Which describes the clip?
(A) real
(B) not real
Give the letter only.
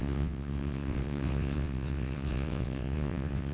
B